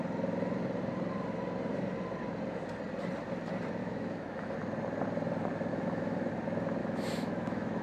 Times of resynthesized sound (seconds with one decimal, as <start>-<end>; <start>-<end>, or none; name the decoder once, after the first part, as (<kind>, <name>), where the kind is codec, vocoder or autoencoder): 3.8-4.5 (autoencoder, DAC-VAE); 5.7-6.3; 6.8-7.8

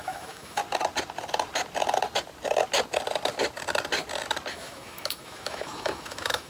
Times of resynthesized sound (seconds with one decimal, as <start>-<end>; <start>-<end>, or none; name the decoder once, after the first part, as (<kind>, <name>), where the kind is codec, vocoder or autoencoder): 0.0-0.6 (autoencoder, DAC-VAE); 4.5-6.5

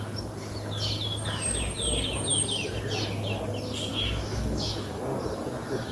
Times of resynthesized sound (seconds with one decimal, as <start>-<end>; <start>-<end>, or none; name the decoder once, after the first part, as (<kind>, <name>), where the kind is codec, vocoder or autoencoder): 3.9-5.0 (autoencoder, DAC-VAE)

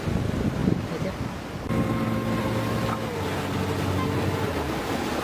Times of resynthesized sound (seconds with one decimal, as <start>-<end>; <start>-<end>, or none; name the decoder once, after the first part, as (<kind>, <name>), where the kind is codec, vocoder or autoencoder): none